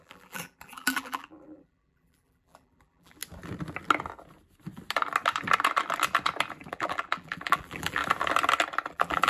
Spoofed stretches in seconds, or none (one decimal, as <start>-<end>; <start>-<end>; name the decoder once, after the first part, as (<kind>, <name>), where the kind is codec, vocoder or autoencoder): 0.0-3.2 (vocoder, BigVGAN v2); 6.7-8.0; 8.9-9.3